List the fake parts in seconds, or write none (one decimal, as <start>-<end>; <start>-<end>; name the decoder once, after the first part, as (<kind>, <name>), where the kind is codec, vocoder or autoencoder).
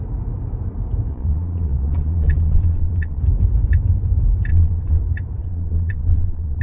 1.1-3.2 (vocoder, Vocos); 4.5-5.0; 5.4-6.6